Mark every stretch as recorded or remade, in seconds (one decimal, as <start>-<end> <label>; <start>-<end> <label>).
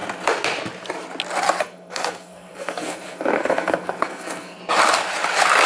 0.0-1.6 recorded; 1.6-4.6 remade; 4.6-5.7 recorded